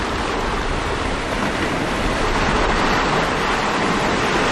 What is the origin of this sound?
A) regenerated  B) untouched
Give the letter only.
B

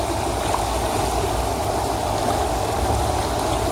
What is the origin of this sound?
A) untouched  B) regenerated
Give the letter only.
A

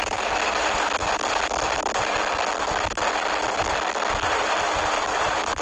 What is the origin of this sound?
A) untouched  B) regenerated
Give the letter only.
A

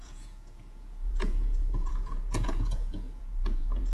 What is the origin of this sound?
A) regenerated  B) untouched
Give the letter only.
A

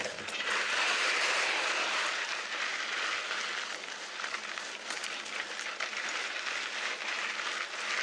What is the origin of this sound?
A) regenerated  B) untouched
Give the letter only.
B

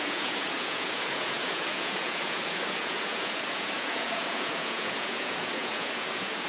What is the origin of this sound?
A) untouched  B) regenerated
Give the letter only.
B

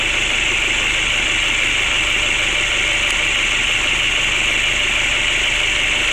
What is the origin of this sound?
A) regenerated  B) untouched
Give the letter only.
B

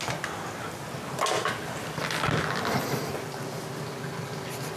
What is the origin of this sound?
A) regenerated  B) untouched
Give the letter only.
B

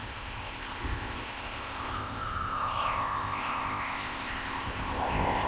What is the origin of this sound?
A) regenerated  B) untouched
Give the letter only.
A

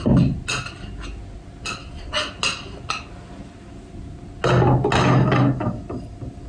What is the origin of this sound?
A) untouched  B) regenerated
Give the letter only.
A